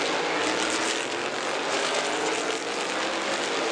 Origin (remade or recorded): recorded